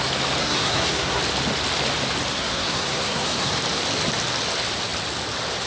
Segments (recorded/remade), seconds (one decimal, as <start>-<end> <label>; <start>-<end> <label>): 0.0-0.4 recorded; 0.4-1.2 remade; 1.2-2.3 recorded; 2.3-3.5 remade; 3.5-5.7 recorded